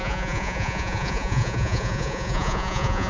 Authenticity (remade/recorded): remade